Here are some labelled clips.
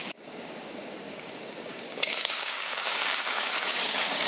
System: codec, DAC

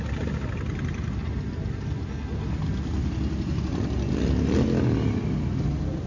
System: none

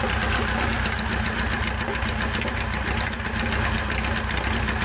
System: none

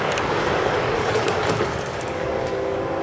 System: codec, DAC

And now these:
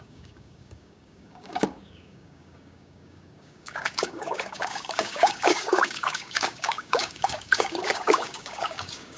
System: codec, DAC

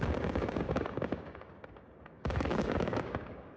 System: codec, DAC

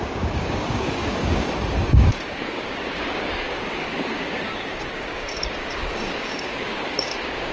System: codec, DAC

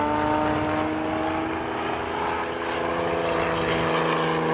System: none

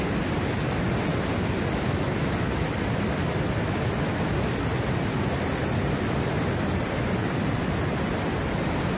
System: none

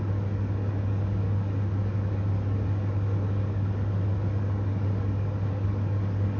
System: codec, DAC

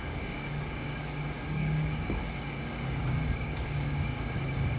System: codec, DAC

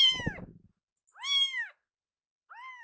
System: none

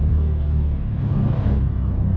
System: codec, DAC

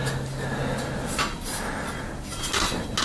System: none